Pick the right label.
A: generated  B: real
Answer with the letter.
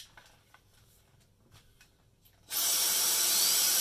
B